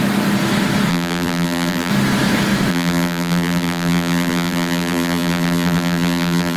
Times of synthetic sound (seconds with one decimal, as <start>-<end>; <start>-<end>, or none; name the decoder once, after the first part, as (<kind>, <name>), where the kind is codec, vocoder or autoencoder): 0.9-1.9 (vocoder, BigVGAN v2); 2.7-6.6